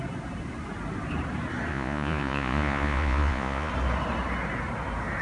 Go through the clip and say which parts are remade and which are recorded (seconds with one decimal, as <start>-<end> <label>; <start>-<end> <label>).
0.0-1.7 recorded; 1.7-3.7 remade; 3.7-5.2 recorded